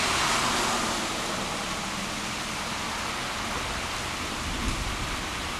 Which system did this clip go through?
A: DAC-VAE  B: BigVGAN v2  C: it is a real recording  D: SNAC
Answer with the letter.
C